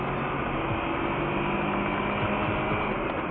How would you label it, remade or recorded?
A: recorded